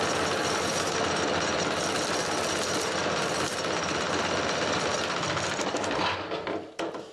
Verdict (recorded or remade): recorded